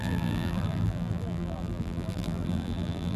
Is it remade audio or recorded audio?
remade